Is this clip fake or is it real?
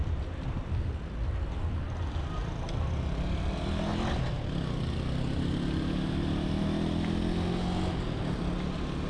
real